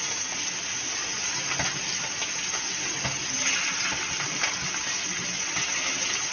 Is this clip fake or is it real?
real